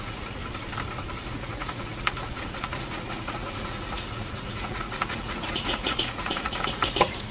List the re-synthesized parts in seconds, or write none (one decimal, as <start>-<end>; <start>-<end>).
0.0-0.4; 1.3-7.3